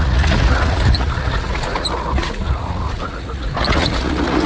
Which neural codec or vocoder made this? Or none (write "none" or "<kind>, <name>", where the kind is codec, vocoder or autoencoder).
vocoder, Vocos